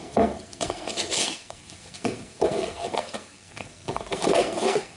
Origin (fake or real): fake